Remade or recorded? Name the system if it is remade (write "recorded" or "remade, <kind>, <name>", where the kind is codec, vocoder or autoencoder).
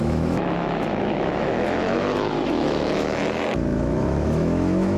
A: remade, autoencoder, DAC-VAE